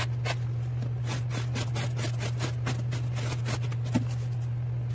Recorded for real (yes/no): yes